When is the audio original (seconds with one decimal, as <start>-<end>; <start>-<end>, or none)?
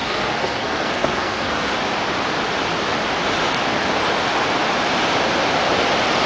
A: 1.7-6.3